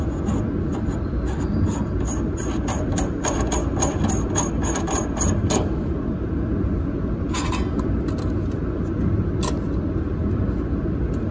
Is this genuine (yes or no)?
yes